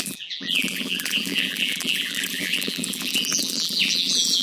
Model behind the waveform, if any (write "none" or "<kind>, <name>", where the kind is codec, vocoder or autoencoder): vocoder, BigVGAN v2